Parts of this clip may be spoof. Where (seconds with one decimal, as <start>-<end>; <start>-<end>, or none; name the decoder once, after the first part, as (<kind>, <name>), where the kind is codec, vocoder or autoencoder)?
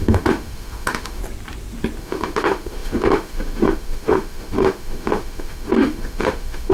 0.0-1.2 (autoencoder, DAC-VAE); 2.0-6.7